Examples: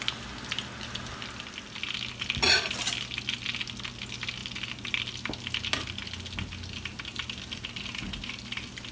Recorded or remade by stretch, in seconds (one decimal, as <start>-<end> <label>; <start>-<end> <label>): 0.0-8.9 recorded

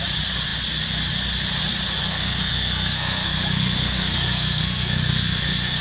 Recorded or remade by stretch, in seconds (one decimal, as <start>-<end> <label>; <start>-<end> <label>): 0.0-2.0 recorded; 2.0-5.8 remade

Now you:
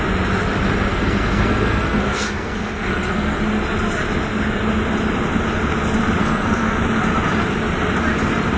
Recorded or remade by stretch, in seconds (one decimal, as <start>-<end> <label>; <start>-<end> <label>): 0.0-0.9 recorded; 0.9-3.4 remade; 3.4-6.2 recorded; 6.2-6.8 remade; 6.8-8.6 recorded

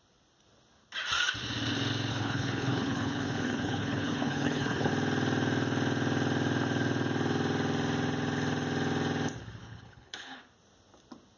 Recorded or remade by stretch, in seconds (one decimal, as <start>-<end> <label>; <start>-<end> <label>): 0.0-2.1 recorded; 2.1-4.9 remade; 4.9-9.6 recorded; 9.6-10.4 remade; 10.4-11.4 recorded

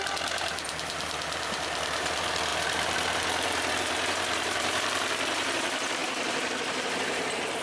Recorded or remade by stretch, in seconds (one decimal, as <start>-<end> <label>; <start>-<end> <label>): 0.0-7.6 remade

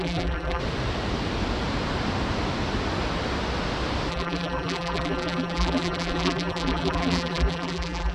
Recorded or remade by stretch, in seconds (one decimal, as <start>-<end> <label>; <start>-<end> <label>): 0.0-0.6 remade; 0.6-4.1 recorded; 4.1-8.1 remade